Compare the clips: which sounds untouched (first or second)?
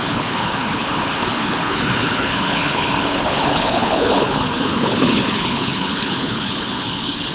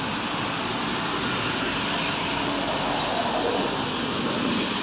second